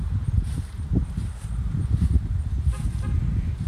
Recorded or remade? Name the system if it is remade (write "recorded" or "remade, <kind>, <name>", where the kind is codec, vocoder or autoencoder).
remade, vocoder, BigVGAN v2